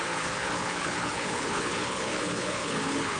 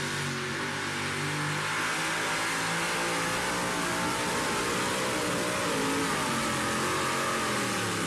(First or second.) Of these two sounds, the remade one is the first